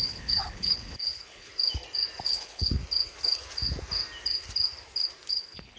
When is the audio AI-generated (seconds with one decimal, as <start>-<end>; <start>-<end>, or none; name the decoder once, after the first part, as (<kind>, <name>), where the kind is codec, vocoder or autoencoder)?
0.0-1.5 (codec, HILCodec); 2.3-2.8; 5.3-5.8